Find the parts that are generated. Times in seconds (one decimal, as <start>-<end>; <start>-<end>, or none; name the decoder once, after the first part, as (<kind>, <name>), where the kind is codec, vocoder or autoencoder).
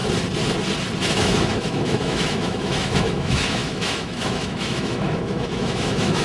1.1-6.2 (autoencoder, DAC-VAE)